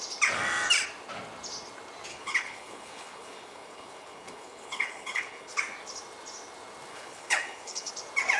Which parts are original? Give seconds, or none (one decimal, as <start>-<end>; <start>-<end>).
0.0-2.1; 5.6-6.9; 7.9-8.4